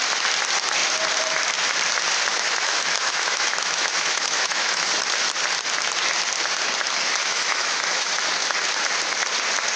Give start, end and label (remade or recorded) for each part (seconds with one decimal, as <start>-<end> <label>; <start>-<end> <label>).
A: 0.0-2.3 recorded; 2.3-4.9 remade; 4.9-7.2 recorded; 7.2-8.1 remade; 8.1-9.8 recorded